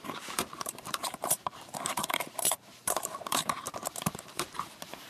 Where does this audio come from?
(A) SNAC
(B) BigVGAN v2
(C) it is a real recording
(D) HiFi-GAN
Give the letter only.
B